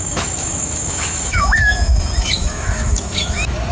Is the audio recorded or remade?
remade